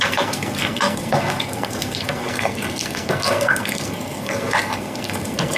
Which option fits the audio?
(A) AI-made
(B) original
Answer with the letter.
A